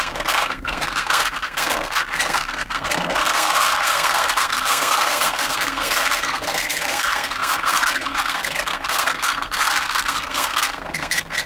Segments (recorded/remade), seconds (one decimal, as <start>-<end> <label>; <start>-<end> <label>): 0.0-11.5 remade